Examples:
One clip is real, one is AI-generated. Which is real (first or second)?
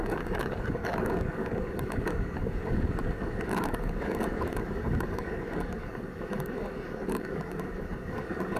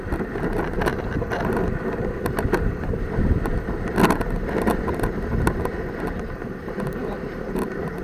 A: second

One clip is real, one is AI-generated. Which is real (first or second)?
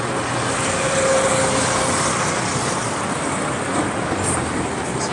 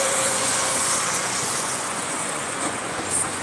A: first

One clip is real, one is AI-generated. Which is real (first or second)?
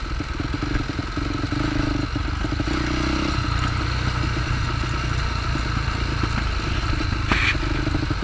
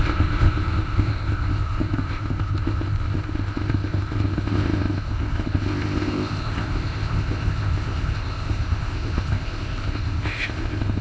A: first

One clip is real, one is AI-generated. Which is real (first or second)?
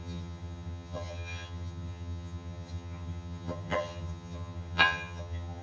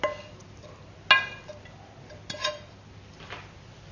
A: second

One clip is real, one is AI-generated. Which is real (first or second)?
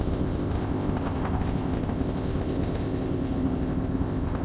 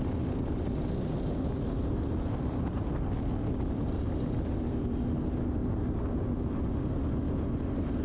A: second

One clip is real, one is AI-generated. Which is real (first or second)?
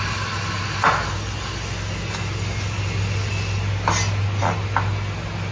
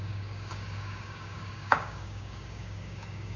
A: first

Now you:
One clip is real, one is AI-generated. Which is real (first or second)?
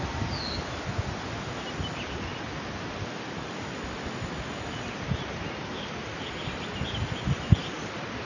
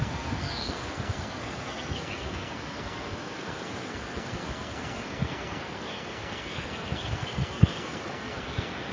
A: first